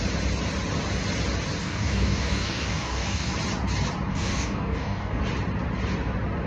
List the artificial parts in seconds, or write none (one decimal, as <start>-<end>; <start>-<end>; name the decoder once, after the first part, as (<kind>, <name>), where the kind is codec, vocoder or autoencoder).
1.6-3.3 (codec, DAC); 4.1-5.2